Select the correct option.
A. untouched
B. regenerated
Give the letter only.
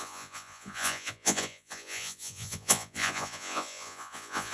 B